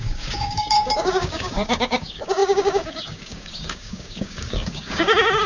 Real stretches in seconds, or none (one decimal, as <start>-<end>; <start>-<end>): none